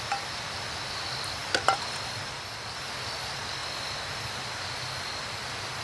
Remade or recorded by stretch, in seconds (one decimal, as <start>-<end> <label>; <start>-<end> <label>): 0.0-5.8 recorded